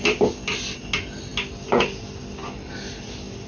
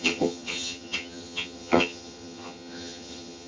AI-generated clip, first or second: second